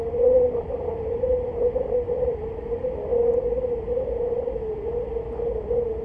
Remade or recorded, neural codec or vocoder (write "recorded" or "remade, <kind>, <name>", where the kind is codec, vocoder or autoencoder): recorded